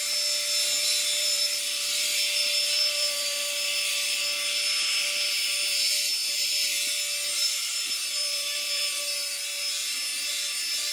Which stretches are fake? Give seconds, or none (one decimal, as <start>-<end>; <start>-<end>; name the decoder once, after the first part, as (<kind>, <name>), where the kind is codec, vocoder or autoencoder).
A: 1.2-3.9 (vocoder, BigVGAN v2); 7.3-9.0